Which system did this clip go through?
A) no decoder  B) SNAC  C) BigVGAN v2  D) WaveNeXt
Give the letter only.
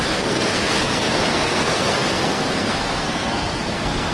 B